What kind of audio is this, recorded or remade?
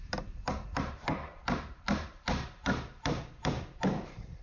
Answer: remade